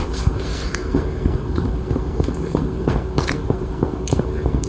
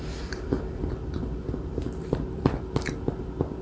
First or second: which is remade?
first